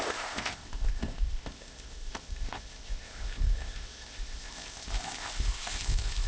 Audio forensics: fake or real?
fake